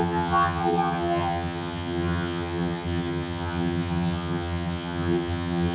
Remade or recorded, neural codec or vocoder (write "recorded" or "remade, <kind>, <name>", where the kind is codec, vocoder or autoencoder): remade, vocoder, HiFi-GAN